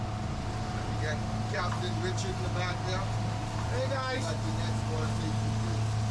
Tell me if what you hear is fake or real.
real